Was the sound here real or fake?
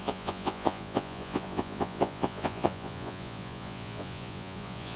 fake